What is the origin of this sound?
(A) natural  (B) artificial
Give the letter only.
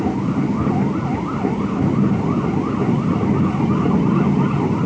A